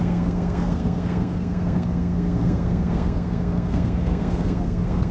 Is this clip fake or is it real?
fake